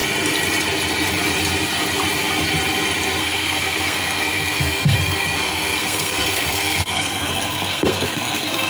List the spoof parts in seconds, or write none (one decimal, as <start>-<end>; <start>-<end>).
3.2-8.7